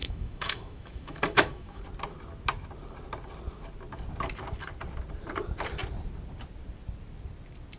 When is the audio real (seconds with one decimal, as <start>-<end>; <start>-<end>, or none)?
1.8-7.8